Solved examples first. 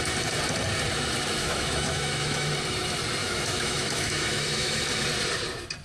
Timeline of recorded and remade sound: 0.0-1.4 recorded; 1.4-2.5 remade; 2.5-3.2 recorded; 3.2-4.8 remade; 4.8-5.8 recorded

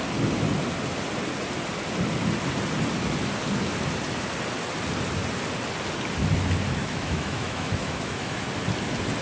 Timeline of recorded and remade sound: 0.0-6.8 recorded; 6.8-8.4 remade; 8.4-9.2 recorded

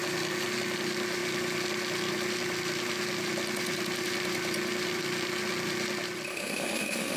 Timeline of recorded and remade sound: 0.0-6.3 recorded; 6.3-7.2 remade

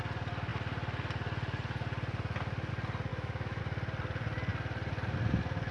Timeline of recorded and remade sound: 0.0-3.1 recorded; 3.1-3.6 remade; 3.6-5.7 recorded

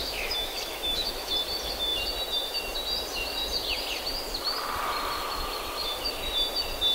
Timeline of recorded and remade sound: 0.0-1.3 remade; 1.3-6.9 recorded